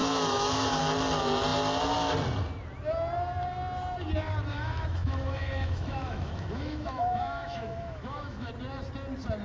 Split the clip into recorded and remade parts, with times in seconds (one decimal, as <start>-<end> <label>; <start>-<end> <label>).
0.0-0.8 remade; 0.8-4.5 recorded; 4.5-8.5 remade; 8.5-9.4 recorded